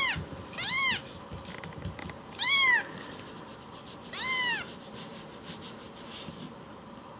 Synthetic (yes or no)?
no